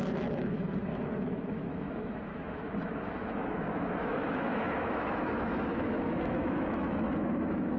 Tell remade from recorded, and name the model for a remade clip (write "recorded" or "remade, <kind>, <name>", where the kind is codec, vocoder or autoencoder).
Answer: remade, autoencoder, DAC-VAE